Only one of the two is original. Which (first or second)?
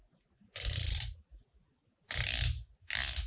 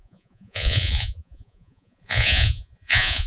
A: first